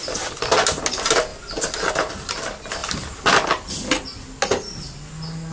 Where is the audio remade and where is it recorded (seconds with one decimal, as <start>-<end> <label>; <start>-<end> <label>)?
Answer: 0.0-5.5 recorded